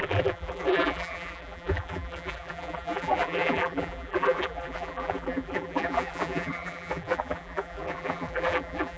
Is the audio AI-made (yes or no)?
yes